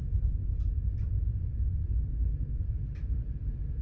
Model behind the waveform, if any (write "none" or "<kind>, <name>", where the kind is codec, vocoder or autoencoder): vocoder, BigVGAN v2